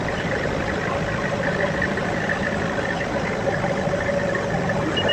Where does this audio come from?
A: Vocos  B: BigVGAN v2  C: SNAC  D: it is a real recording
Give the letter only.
D